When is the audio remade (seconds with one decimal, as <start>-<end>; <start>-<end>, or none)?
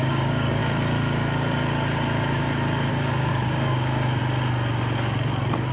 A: 0.0-0.6; 2.9-4.2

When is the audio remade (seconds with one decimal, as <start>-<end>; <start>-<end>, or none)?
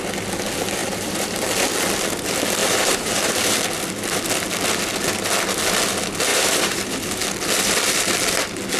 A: 0.8-1.7; 2.6-3.6; 6.3-6.9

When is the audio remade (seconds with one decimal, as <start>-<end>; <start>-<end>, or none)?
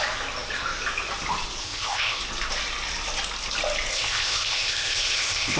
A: 1.6-2.2; 3.9-5.6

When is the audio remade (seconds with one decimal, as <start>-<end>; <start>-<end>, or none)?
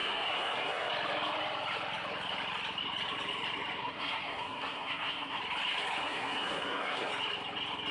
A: 0.0-0.9; 3.8-5.4; 6.0-7.1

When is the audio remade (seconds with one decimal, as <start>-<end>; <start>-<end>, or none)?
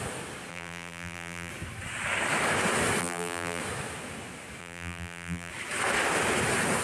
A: 0.5-1.5; 3.0-3.6; 4.6-5.5